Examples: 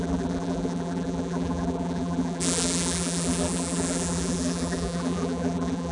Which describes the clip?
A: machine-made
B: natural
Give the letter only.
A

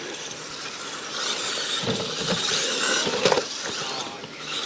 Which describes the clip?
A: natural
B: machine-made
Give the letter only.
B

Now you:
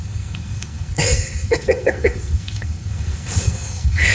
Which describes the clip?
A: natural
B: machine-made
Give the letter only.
B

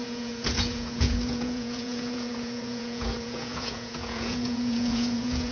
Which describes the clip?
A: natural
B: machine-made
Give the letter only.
B